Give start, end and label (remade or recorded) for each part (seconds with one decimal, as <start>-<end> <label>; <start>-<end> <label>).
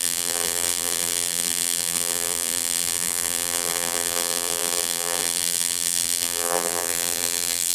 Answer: 0.0-7.7 remade